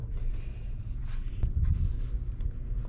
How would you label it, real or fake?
fake